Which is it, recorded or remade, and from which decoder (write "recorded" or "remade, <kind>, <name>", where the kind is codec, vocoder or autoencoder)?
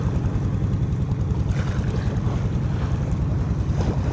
recorded